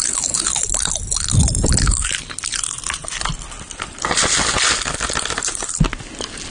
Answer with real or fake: real